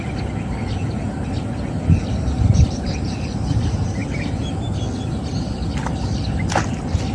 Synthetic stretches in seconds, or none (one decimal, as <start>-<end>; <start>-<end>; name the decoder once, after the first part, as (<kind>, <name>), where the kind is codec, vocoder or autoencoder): none